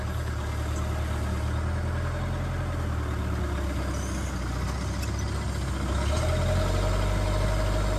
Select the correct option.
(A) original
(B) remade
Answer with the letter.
A